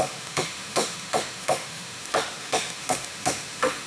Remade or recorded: remade